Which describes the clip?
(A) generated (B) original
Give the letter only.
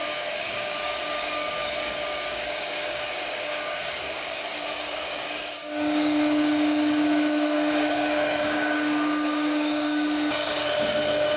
A